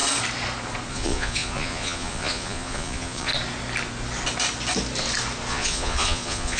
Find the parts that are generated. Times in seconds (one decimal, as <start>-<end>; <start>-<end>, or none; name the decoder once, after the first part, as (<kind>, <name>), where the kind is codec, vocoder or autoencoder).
0.9-3.3 (vocoder, Vocos); 5.5-6.6